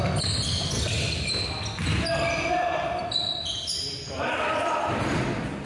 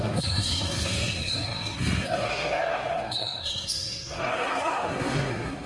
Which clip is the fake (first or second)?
second